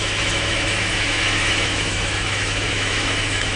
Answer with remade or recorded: remade